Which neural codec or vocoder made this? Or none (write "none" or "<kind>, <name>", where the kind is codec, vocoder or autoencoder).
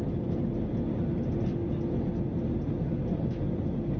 none